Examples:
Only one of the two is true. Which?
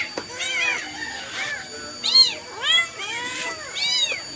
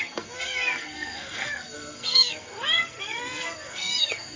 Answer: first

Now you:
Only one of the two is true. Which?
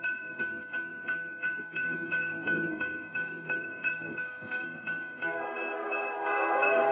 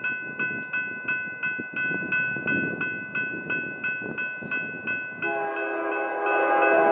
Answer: second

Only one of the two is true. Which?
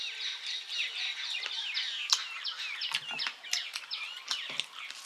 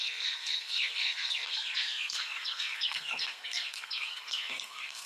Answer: first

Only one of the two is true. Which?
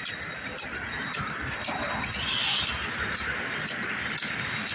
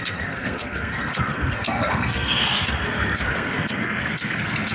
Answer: first